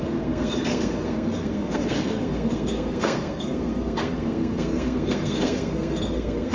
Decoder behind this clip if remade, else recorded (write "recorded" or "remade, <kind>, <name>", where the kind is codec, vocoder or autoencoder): remade, codec, SNAC